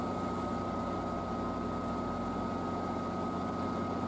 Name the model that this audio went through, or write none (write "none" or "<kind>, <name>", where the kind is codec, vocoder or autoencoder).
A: none